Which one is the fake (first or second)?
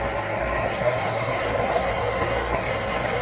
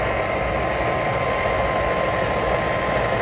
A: first